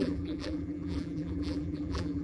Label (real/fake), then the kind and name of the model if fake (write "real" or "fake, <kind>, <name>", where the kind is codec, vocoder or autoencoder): fake, vocoder, BigVGAN v2